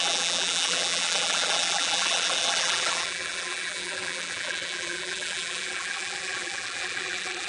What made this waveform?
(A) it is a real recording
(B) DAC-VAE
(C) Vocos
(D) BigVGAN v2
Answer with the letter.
D